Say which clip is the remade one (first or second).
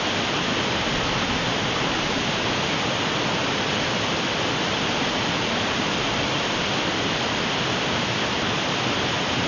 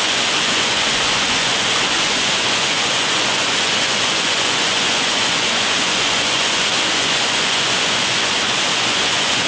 second